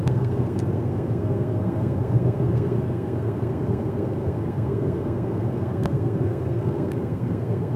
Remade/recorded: remade